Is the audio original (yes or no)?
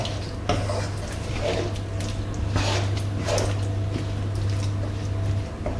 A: yes